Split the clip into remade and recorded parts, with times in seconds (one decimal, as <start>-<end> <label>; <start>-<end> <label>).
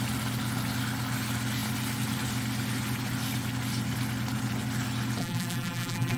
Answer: 0.0-5.2 recorded; 5.2-6.2 remade